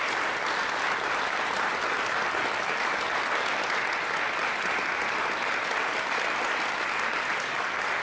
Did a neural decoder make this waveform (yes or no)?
no